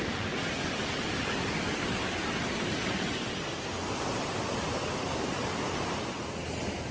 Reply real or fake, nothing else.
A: real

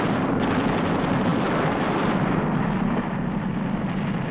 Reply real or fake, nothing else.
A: real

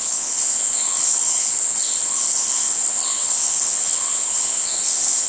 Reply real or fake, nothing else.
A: fake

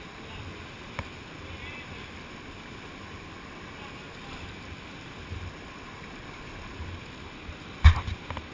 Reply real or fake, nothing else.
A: real